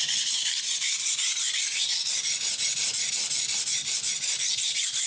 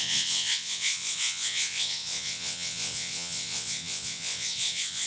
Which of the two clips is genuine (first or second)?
first